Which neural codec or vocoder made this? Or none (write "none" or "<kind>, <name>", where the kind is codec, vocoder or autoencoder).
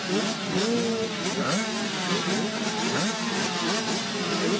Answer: none